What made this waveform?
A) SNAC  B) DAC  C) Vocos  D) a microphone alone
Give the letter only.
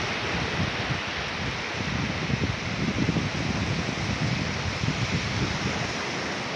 D